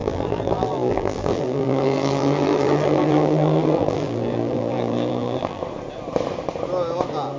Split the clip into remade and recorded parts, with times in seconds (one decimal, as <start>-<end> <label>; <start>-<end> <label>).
0.0-5.6 remade; 5.6-7.4 recorded